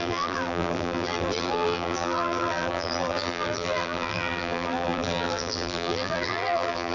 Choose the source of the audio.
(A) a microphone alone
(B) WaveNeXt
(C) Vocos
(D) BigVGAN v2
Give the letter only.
D